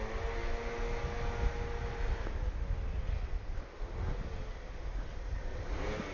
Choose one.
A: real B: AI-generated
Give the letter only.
A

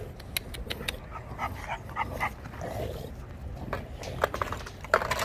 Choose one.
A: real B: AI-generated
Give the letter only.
A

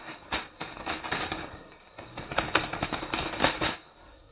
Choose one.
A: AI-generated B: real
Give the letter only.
B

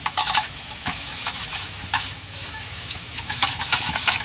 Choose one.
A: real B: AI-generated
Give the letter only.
B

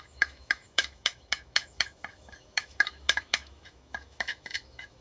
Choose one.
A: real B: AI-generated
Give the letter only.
B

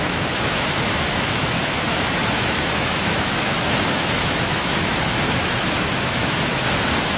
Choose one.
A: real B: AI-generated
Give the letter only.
B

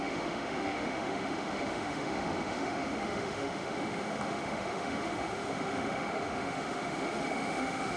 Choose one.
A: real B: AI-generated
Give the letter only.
B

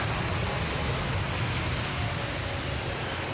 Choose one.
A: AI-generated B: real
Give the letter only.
B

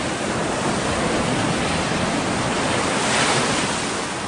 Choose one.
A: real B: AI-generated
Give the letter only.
A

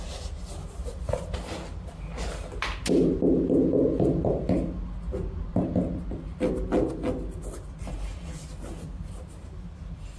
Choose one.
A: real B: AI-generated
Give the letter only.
A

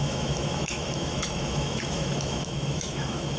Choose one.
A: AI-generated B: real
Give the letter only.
A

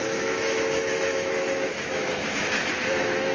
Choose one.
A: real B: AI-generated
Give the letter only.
B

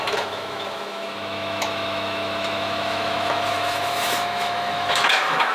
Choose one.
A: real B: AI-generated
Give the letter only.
B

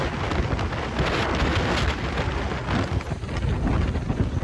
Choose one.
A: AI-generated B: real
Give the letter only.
B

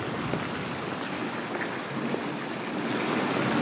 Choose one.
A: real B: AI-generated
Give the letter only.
A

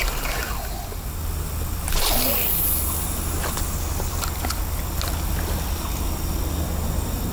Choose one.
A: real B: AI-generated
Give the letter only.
A